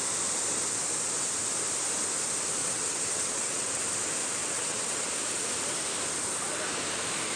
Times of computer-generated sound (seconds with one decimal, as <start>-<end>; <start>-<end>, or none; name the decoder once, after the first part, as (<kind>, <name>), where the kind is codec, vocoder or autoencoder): 2.6-3.8 (vocoder, WaveNeXt); 4.4-5.1